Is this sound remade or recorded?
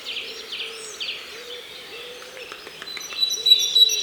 remade